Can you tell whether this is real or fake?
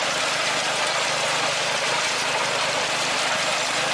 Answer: real